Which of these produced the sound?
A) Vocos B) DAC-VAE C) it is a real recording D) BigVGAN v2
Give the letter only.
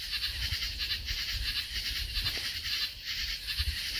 D